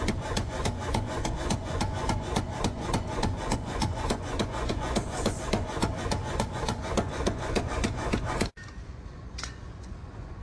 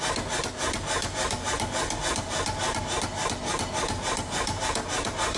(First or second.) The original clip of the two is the second